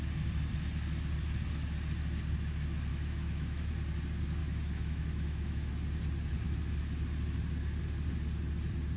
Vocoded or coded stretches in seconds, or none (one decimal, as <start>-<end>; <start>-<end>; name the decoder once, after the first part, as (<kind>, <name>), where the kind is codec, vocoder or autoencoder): 2.9-3.7 (autoencoder, DAC-VAE); 4.4-5.7